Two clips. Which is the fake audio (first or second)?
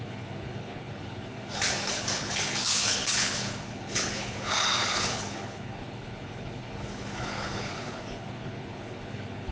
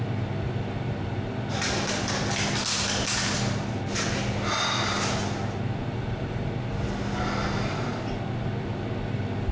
first